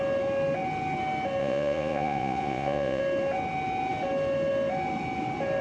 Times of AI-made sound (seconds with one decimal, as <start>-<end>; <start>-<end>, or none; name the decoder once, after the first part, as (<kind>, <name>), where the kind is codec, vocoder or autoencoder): 1.4-3.0 (vocoder, Vocos)